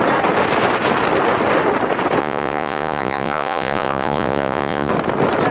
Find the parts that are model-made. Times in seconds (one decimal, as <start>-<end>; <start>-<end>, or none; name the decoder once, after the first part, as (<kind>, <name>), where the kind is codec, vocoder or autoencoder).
2.2-4.9 (vocoder, Vocos)